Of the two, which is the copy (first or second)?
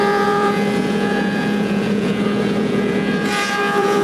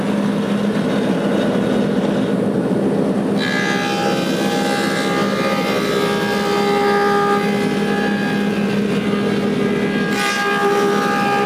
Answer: first